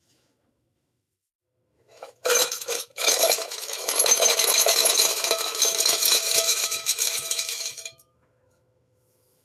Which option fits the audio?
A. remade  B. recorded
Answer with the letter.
A